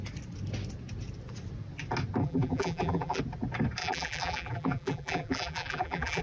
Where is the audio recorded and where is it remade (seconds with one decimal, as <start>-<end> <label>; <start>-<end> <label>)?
0.0-2.2 recorded; 2.2-3.2 remade; 3.2-3.8 recorded; 3.8-6.2 remade